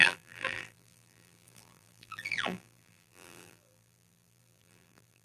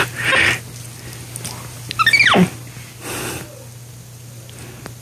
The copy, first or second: first